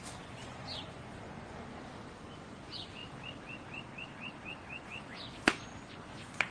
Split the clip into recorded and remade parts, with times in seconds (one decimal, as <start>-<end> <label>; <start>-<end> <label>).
0.0-3.0 remade; 3.0-4.8 recorded; 4.8-6.5 remade